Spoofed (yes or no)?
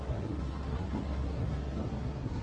yes